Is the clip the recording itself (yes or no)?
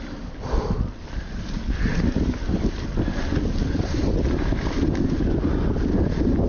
yes